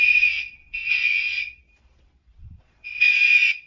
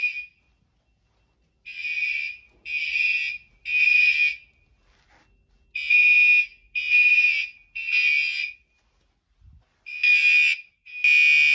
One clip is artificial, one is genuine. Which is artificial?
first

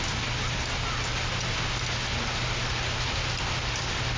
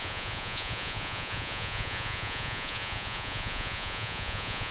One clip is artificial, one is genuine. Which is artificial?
second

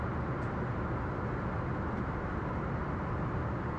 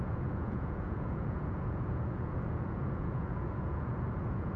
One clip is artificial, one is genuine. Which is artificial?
second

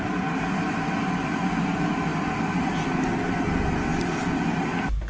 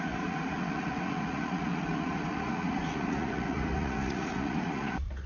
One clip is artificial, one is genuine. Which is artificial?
second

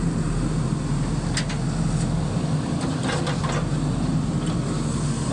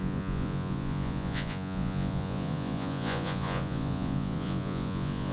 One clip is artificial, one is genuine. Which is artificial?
second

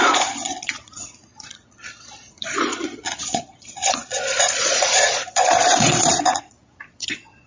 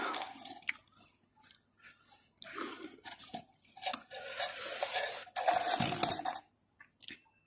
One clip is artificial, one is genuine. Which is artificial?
first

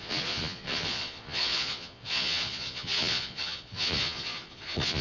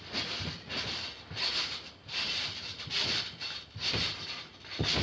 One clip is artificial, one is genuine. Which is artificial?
first